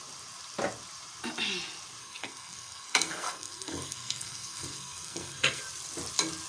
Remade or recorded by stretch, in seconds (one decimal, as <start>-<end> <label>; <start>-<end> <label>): 0.0-2.0 recorded; 2.0-5.6 remade; 5.6-6.5 recorded